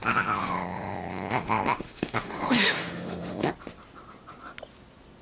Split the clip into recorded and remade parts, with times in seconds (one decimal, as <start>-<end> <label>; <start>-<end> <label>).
0.0-0.4 recorded; 0.4-3.5 remade; 3.5-5.2 recorded